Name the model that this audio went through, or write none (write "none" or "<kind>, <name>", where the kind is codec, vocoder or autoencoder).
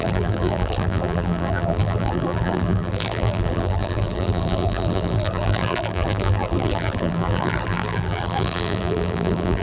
vocoder, BigVGAN v2